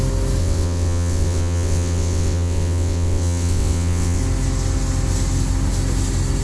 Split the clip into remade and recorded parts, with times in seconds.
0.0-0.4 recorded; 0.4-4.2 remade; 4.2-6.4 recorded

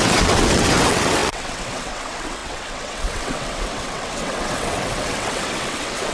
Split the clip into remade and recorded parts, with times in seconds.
0.0-6.1 remade